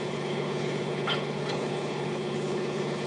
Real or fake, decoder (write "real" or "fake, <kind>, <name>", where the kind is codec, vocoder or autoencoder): fake, codec, HILCodec